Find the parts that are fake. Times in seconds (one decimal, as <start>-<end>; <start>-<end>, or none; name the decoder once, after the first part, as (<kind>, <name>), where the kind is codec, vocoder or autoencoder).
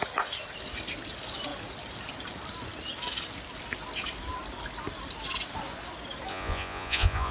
6.3-7.3 (vocoder, Vocos)